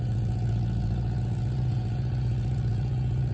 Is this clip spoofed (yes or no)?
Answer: yes